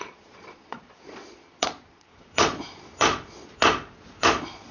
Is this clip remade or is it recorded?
remade